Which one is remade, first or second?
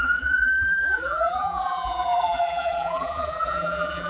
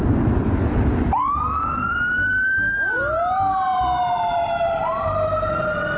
first